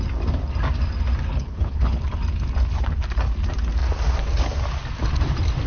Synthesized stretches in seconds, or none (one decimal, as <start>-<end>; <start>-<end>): 1.3-2.0